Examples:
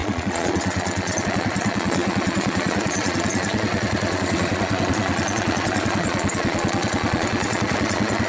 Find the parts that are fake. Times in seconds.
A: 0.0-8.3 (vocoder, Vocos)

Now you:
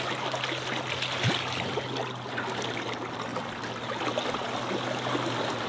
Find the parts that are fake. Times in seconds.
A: none

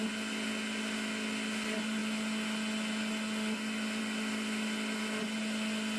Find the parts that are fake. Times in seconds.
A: none

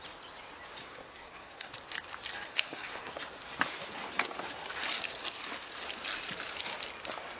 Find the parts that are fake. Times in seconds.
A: 0.8-1.7 (codec, SNAC); 2.5-3.1

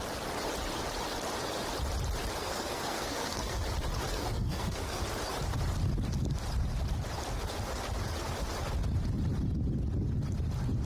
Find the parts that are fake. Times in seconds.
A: 2.4-3.6 (codec, SNAC); 4.1-5.0

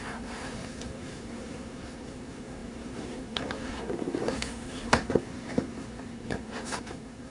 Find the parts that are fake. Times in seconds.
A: 0.0-7.3 (codec, SNAC)

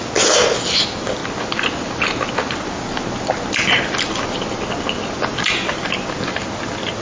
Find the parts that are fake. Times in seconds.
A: none

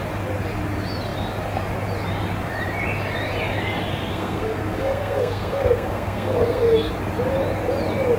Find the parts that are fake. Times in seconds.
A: 3.9-6.9 (codec, SNAC)